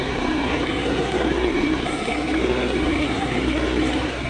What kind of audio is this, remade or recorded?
remade